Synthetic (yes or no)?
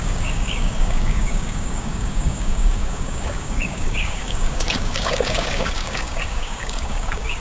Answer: yes